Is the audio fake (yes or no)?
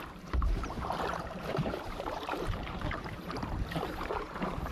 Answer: yes